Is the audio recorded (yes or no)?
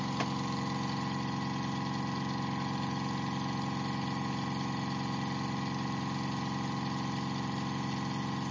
yes